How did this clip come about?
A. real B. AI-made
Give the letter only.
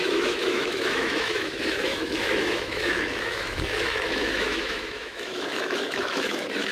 B